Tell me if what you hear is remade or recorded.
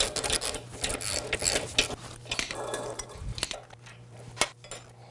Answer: recorded